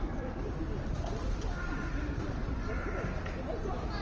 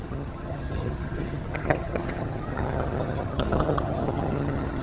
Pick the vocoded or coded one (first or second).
second